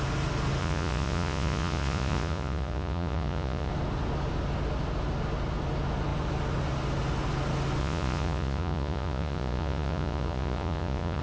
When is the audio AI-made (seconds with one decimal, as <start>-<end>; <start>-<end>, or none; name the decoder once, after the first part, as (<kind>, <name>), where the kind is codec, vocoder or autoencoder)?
0.6-3.7 (vocoder, Vocos); 7.8-11.2